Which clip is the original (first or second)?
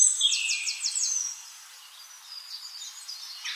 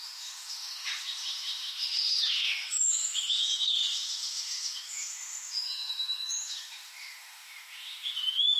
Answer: first